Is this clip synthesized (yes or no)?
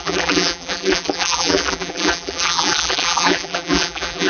yes